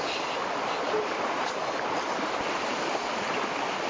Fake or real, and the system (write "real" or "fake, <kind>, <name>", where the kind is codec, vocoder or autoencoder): real